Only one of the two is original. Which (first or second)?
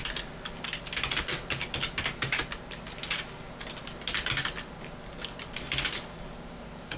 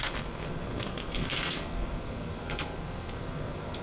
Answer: first